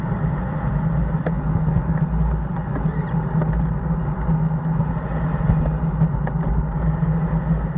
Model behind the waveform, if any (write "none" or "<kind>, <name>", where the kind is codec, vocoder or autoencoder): none